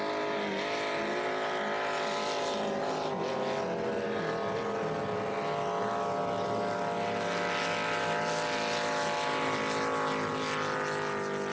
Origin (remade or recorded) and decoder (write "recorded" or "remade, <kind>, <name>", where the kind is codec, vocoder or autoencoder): recorded